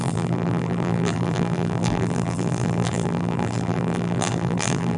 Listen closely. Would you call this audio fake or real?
fake